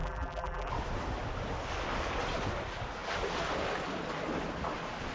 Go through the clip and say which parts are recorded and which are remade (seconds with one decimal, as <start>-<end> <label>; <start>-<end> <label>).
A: 0.0-0.7 remade; 0.7-5.1 recorded